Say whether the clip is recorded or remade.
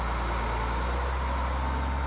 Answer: recorded